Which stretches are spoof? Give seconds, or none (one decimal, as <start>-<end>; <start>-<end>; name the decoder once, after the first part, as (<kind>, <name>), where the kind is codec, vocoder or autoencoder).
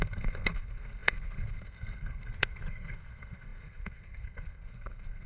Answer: 0.0-5.3 (codec, SNAC)